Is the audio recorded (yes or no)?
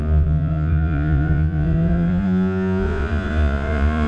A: no